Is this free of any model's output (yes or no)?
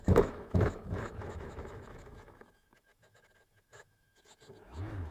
no